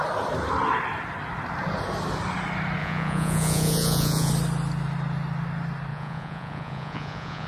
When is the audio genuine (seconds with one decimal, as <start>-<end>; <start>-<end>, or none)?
0.0-2.8; 4.3-5.9